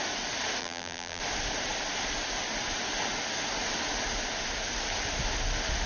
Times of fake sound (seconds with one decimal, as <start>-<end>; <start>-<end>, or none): 0.6-1.2